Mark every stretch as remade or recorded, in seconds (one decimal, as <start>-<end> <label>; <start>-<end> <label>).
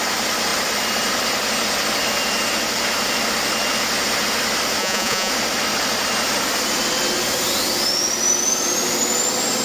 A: 0.0-4.8 recorded; 4.8-5.3 remade; 5.3-9.6 recorded